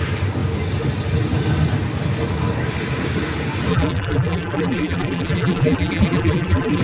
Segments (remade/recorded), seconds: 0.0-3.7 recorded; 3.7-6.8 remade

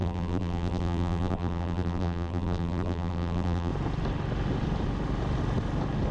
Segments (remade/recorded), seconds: 0.0-3.7 remade; 3.7-6.1 recorded

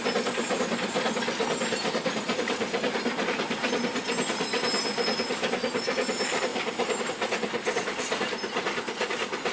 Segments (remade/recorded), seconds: 0.0-9.5 recorded

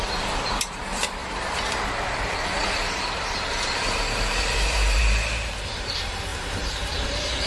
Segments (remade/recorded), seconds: 0.0-7.5 remade